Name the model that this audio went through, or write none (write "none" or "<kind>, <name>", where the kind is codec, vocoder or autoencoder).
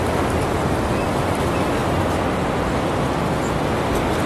none